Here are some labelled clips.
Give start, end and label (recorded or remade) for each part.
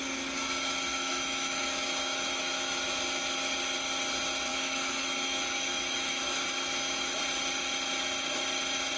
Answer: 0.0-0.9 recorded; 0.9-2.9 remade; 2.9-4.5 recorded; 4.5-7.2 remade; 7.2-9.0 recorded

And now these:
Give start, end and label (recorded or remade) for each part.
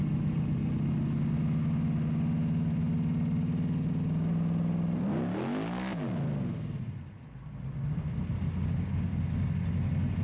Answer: 0.0-10.2 recorded